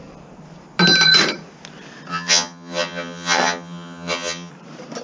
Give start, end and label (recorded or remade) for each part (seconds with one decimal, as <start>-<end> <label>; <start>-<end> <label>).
0.0-2.1 recorded; 2.1-4.5 remade; 4.5-5.0 recorded